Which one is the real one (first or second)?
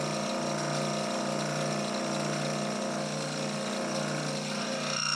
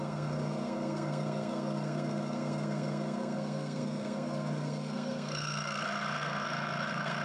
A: first